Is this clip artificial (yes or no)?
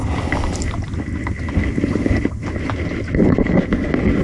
no